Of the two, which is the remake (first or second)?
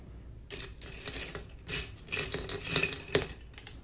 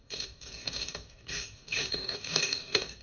second